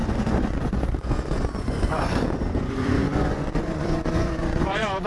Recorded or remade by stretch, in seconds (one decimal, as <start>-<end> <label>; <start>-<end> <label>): 0.0-5.1 remade